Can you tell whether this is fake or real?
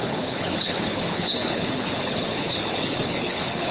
fake